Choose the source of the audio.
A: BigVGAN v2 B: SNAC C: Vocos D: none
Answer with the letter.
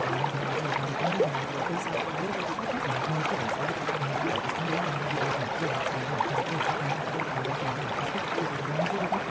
D